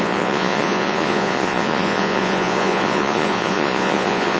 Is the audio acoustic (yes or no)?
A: no